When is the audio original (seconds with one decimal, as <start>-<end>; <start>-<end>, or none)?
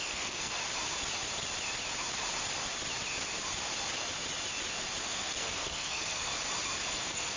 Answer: 0.6-5.0; 6.3-6.9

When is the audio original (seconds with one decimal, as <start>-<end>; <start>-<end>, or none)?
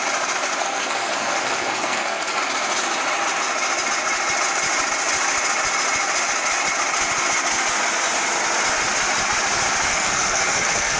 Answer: 0.0-0.6; 2.4-9.9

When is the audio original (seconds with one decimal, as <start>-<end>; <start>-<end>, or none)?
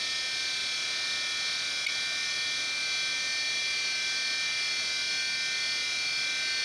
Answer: 0.0-6.6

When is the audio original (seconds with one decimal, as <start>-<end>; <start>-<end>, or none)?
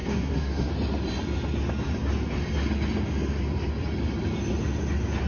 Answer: 0.7-5.3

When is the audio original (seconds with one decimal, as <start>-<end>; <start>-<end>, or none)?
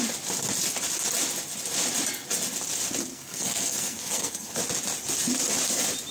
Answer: 0.0-3.1; 4.6-6.1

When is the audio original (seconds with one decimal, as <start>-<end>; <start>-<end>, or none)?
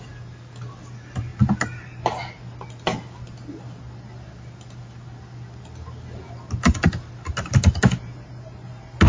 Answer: 0.0-9.1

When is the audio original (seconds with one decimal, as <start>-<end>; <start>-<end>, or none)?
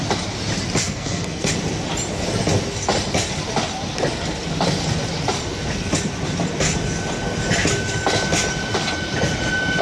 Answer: 0.0-0.8; 1.5-9.8